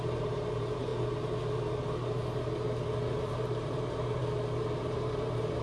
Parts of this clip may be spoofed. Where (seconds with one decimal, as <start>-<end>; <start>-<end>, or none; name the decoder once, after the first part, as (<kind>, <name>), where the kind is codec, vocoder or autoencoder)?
0.0-0.9 (vocoder, BigVGAN v2); 3.2-4.2; 4.8-5.6